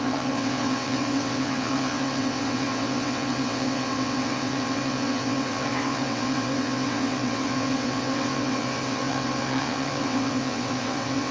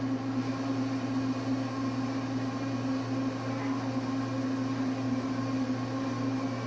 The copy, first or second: first